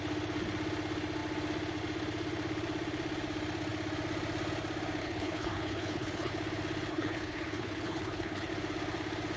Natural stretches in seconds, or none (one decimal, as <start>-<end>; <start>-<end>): 0.0-5.0; 6.3-6.9; 8.5-9.4